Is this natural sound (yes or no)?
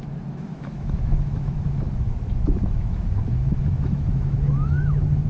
no